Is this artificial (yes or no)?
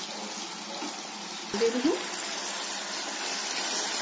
no